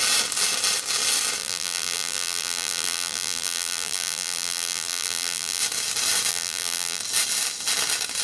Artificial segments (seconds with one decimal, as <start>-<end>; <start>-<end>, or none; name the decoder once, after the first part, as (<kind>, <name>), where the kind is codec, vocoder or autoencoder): 1.4-5.6 (vocoder, BigVGAN v2); 6.3-7.0

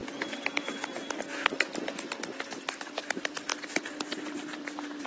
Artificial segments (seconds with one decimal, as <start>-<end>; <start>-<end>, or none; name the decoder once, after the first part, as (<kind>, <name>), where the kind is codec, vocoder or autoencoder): 0.0-1.2 (vocoder, BigVGAN v2); 3.5-5.1

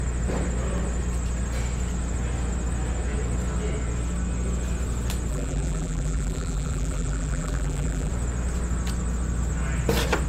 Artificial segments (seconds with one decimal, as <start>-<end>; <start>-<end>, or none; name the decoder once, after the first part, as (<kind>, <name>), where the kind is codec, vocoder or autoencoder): 5.3-8.1 (vocoder, BigVGAN v2)

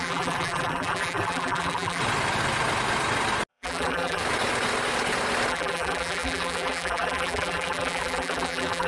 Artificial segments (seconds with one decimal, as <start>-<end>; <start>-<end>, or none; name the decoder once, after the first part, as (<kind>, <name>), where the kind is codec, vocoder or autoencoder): 0.0-2.0 (vocoder, BigVGAN v2); 3.5-4.2; 5.5-8.9

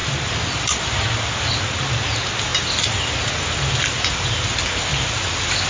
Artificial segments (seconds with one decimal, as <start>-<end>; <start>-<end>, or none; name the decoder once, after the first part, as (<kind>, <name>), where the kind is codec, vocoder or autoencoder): 0.0-1.5 (vocoder, BigVGAN v2); 2.5-3.8; 4.9-5.7